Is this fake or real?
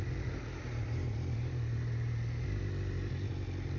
real